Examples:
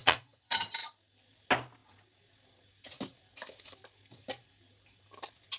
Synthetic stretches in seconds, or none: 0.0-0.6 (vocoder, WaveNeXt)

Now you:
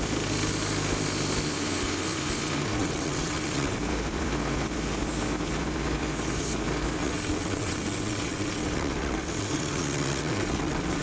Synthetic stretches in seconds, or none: 2.8-3.8 (vocoder, WaveNeXt); 7.0-11.0